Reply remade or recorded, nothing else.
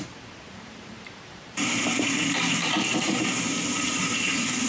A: remade